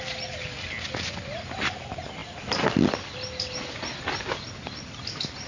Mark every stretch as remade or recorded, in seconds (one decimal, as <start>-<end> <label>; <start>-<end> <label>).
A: 0.0-5.5 recorded